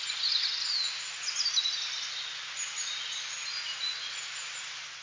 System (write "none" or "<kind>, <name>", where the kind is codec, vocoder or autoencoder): none